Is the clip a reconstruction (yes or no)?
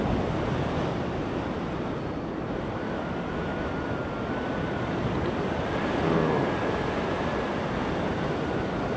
no